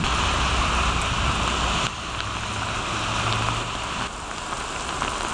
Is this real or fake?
real